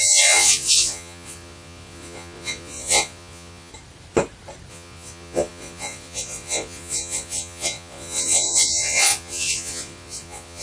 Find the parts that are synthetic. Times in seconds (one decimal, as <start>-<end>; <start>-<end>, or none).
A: 0.0-3.7; 4.7-10.6